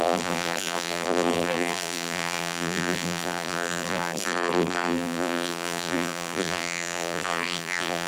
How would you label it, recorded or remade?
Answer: remade